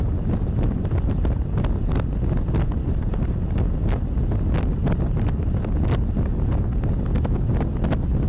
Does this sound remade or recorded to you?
recorded